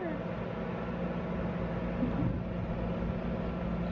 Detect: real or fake real